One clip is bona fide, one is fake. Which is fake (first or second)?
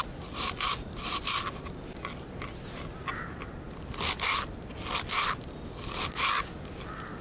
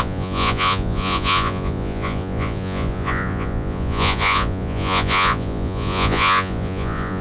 second